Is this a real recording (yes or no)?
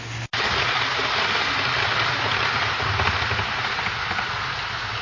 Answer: yes